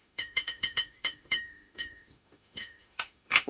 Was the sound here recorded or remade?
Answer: remade